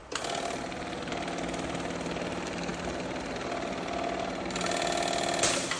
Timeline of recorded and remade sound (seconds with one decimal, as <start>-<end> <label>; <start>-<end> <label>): 0.0-5.8 recorded